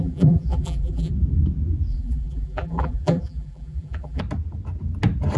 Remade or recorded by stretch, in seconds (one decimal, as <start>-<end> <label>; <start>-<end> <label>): 0.0-1.1 remade; 1.1-1.9 recorded; 1.9-4.2 remade; 4.2-5.4 recorded